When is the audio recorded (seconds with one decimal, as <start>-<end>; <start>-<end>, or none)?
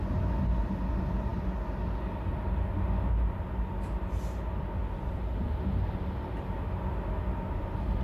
0.0-8.0